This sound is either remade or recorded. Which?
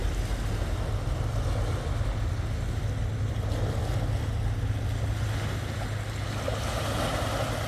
recorded